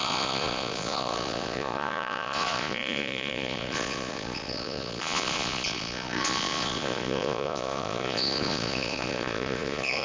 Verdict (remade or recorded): remade